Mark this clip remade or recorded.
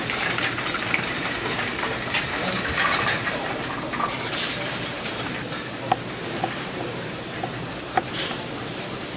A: remade